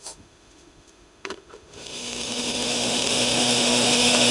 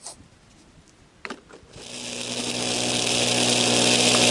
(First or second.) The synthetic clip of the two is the first